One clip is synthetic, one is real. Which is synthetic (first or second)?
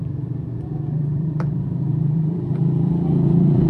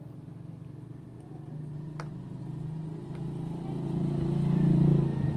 first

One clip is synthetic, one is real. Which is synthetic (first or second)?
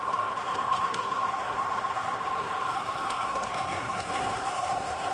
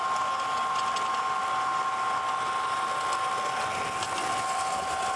first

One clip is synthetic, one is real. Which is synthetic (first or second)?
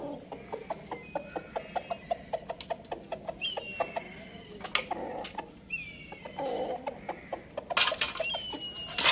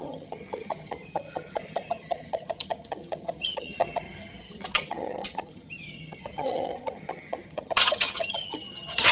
second